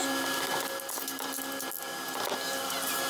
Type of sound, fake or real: real